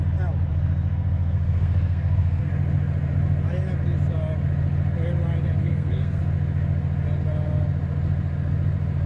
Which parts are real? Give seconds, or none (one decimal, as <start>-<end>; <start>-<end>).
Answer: 0.0-0.5; 2.5-5.6; 6.2-9.1